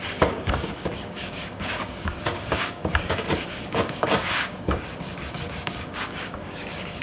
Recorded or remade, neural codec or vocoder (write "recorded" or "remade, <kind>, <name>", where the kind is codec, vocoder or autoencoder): remade, codec, DAC